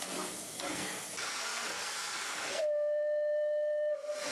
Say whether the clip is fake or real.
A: fake